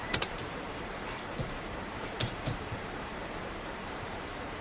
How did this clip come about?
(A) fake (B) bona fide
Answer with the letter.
A